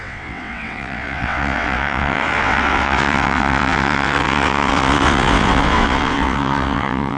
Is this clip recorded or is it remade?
remade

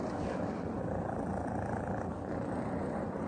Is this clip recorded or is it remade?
recorded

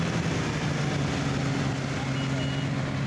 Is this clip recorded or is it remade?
recorded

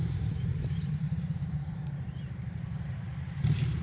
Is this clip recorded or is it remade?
remade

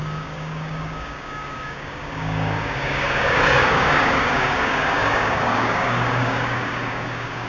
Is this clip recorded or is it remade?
remade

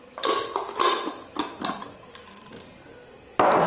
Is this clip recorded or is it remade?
recorded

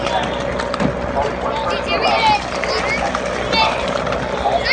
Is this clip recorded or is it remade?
recorded